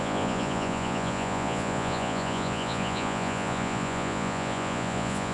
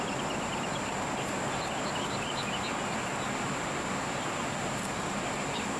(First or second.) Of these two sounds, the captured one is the second